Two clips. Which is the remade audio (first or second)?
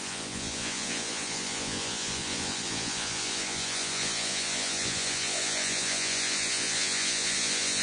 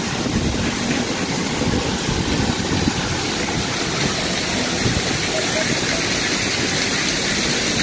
first